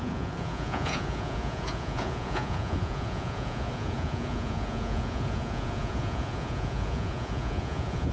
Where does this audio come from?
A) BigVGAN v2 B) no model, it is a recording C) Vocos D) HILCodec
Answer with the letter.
C